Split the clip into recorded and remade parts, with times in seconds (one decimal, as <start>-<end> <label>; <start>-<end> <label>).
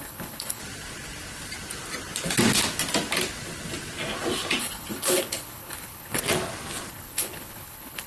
0.0-0.6 remade; 0.6-4.6 recorded; 4.6-6.2 remade; 6.2-6.9 recorded; 6.9-8.1 remade